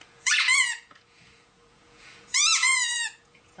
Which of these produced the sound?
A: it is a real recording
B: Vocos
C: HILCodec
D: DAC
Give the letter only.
B